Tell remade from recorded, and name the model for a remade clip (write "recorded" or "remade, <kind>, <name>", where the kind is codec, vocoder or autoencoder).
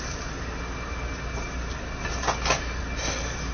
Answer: recorded